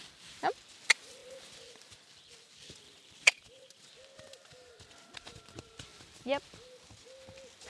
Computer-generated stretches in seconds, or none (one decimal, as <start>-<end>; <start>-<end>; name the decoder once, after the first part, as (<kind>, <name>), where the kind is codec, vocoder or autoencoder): none